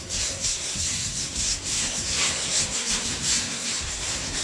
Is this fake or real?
fake